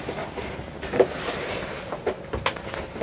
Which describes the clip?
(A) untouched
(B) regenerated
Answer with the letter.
B